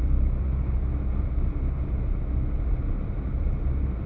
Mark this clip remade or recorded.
recorded